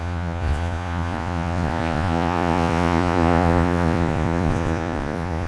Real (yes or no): no